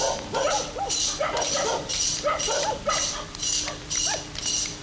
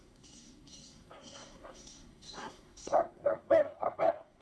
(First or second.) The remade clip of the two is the second